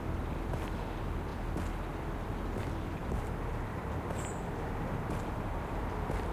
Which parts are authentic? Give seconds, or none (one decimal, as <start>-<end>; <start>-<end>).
none